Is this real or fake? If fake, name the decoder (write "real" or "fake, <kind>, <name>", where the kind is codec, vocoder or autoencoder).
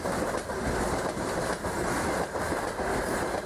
real